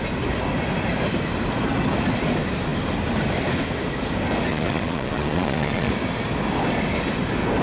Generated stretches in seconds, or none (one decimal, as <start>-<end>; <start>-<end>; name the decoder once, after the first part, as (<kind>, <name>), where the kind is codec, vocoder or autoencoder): 4.5-5.9 (vocoder, Vocos)